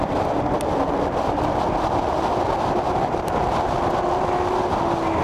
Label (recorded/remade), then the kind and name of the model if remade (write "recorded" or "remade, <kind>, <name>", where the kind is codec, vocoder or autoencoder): recorded